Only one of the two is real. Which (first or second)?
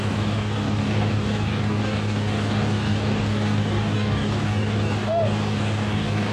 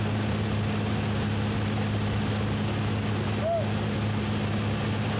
second